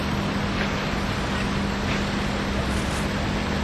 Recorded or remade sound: recorded